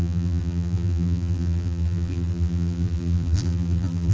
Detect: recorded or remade remade